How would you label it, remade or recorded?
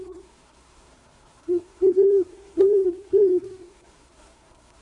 remade